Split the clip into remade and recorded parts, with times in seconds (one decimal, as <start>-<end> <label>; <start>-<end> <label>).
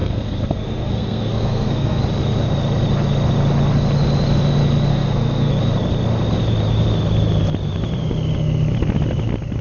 0.0-2.0 remade; 2.0-4.9 recorded; 4.9-5.5 remade; 5.5-9.6 recorded